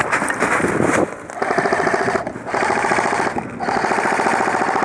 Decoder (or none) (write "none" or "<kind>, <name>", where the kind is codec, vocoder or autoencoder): vocoder, BigVGAN v2